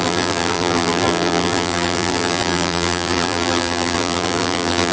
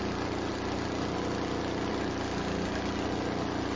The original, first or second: second